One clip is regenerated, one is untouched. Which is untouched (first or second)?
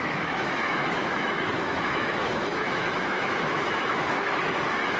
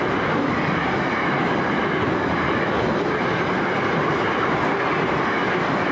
second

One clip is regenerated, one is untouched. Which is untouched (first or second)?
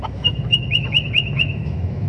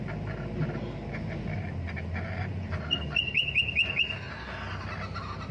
second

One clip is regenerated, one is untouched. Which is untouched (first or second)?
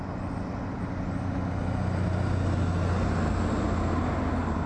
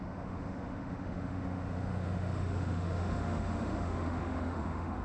first